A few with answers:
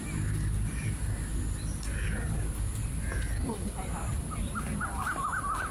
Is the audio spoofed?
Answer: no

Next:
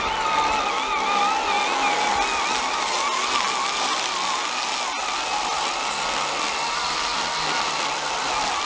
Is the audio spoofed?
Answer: no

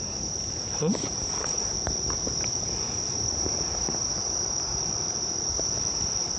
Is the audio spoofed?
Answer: yes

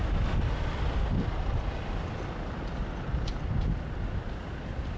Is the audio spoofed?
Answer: no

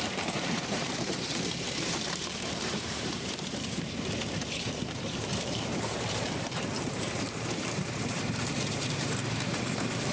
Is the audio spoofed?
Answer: yes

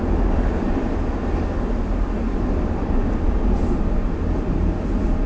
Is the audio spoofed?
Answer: no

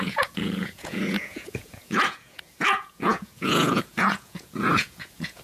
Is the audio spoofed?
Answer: yes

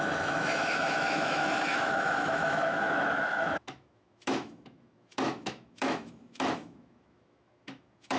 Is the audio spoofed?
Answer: yes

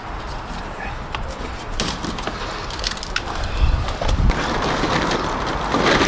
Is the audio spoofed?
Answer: no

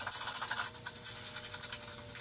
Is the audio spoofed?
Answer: no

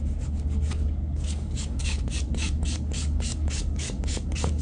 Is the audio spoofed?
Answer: yes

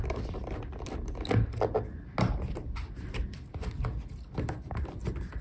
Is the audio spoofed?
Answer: no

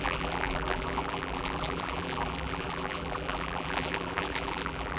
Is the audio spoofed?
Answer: yes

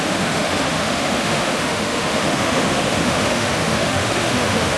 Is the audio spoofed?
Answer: yes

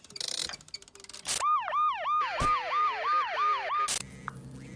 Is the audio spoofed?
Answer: no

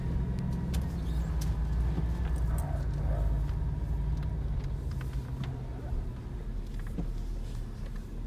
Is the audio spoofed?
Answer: no